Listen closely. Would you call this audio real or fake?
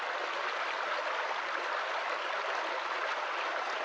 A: real